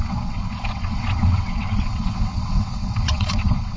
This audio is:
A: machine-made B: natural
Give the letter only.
A